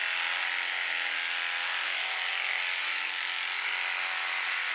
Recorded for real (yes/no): yes